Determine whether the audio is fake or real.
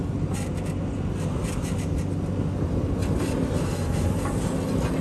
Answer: real